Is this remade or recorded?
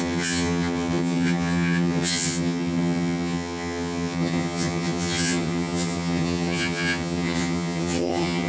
remade